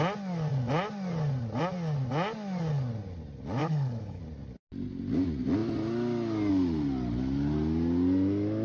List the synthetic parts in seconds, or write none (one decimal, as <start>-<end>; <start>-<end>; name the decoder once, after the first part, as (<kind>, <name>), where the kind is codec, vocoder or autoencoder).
3.6-4.2 (codec, HILCodec)